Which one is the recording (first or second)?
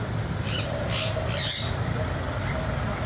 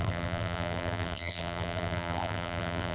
first